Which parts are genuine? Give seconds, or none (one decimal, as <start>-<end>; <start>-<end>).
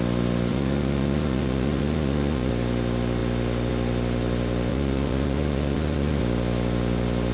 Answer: 0.0-0.5; 2.5-4.7; 6.2-7.3